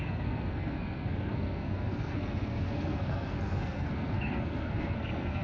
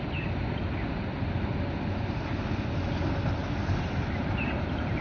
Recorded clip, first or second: second